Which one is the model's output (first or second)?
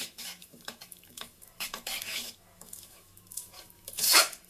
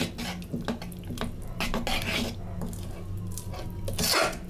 first